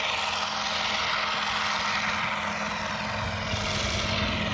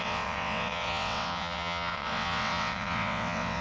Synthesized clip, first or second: second